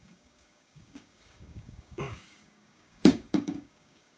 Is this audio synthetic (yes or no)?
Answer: yes